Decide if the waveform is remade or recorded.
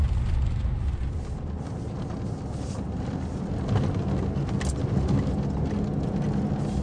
recorded